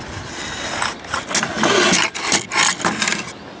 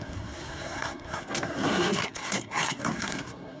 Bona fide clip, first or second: first